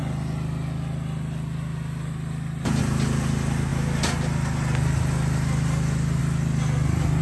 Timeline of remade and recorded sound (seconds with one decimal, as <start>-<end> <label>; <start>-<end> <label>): 0.0-7.2 recorded